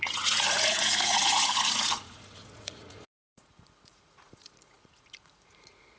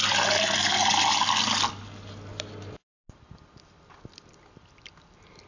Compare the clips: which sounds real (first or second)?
second